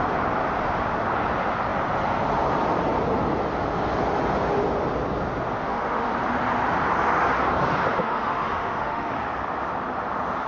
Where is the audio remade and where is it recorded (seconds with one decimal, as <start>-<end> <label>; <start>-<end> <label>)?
0.0-5.6 recorded; 5.6-6.1 remade; 6.1-8.0 recorded; 8.0-9.1 remade; 9.1-10.5 recorded

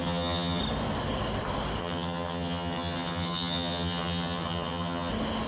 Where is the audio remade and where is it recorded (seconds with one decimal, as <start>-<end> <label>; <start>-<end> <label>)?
0.0-0.6 remade; 0.6-1.8 recorded; 1.8-5.1 remade; 5.1-5.5 recorded

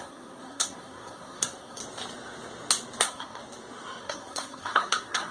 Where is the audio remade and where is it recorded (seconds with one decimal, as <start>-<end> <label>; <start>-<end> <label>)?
0.0-1.8 remade; 1.8-3.0 recorded; 3.0-3.4 remade; 3.4-4.0 recorded; 4.0-5.3 remade

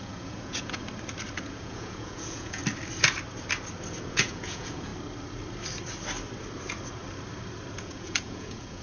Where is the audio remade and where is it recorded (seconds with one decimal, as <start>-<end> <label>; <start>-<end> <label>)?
0.0-0.8 remade; 0.8-1.4 recorded; 1.4-2.6 remade; 2.6-4.1 recorded; 4.1-4.9 remade; 4.9-7.7 recorded; 7.7-8.8 remade